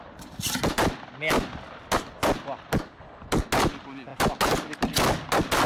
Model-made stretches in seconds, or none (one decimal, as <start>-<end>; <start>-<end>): none